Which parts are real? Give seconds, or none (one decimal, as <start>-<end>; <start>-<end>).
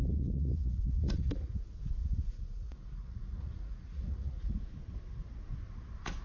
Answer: 1.6-2.0; 4.6-6.2